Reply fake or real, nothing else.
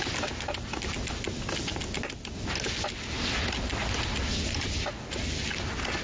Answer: real